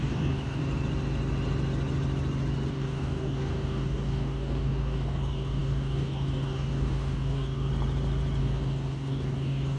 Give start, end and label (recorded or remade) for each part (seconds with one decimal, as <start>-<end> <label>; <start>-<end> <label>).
0.0-0.6 remade; 0.6-2.7 recorded; 2.7-7.7 remade; 7.7-8.4 recorded; 8.4-9.8 remade